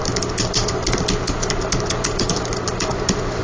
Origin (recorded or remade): recorded